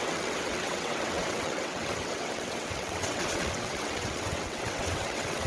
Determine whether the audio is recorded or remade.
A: remade